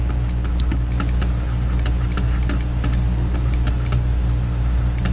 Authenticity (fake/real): real